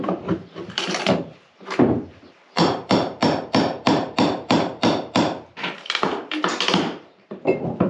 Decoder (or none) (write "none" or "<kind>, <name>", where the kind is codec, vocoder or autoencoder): vocoder, BigVGAN v2